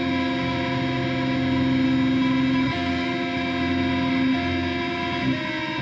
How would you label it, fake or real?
real